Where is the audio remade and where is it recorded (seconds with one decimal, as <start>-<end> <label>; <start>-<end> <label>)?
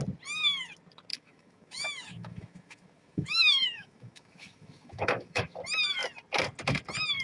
0.0-1.1 recorded; 1.1-5.4 remade; 5.4-7.2 recorded